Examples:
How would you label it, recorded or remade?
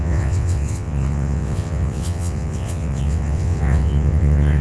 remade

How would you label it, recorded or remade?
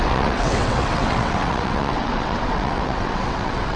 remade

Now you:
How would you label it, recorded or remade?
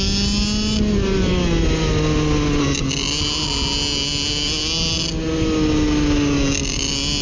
recorded